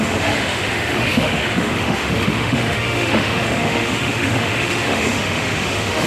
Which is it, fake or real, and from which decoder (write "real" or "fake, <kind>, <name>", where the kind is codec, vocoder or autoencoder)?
fake, autoencoder, DAC-VAE